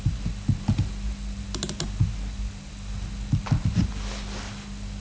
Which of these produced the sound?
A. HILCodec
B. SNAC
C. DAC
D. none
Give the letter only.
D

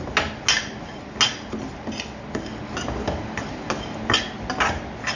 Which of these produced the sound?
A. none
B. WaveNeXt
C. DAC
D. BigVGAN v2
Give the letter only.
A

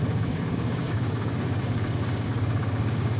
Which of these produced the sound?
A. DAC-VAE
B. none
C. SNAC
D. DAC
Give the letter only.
D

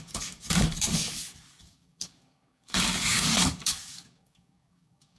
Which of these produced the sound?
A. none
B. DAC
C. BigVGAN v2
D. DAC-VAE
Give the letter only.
B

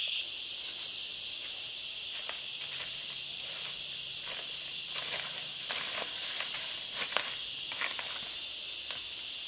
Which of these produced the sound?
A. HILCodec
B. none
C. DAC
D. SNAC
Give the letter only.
B